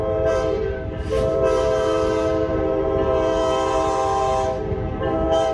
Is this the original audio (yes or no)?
no